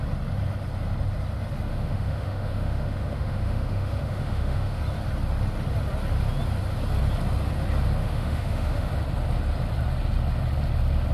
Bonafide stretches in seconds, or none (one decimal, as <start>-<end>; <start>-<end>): 0.0-1.7; 4.8-8.0; 8.9-11.1